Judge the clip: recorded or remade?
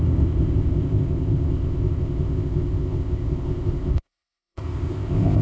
remade